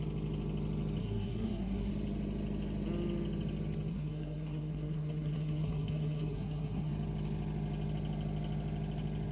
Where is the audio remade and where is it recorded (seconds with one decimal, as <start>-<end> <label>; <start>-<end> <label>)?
0.0-1.0 recorded; 1.0-1.9 remade; 1.9-3.9 recorded; 3.9-6.9 remade; 6.9-9.3 recorded